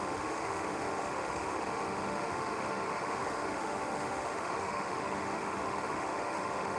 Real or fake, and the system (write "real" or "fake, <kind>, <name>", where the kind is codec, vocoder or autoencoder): fake, autoencoder, DAC-VAE